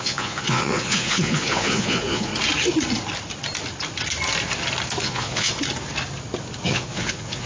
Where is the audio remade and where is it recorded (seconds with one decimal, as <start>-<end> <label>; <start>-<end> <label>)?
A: 0.0-2.3 remade; 2.3-5.0 recorded; 5.0-5.5 remade; 5.5-6.7 recorded; 6.7-7.5 remade